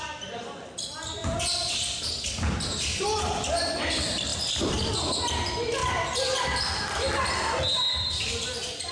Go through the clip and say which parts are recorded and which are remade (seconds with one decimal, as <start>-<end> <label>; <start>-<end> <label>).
0.0-8.9 recorded